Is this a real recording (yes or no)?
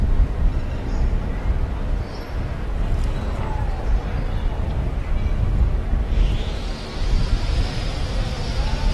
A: yes